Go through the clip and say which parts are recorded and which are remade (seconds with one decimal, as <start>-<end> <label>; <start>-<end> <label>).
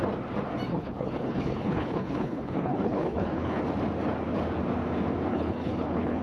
0.0-0.7 recorded; 0.7-3.6 remade; 3.6-5.3 recorded; 5.3-6.2 remade